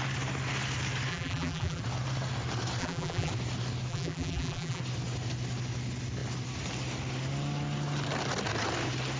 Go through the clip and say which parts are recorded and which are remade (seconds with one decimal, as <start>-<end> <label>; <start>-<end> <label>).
0.0-1.1 recorded; 1.1-1.8 remade; 1.8-2.8 recorded; 2.8-3.3 remade; 3.3-3.9 recorded; 3.9-4.8 remade; 4.8-9.2 recorded